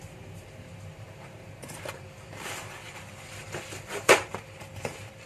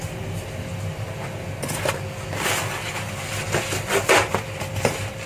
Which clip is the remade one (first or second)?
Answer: first